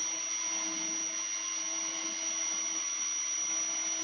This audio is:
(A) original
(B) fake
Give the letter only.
A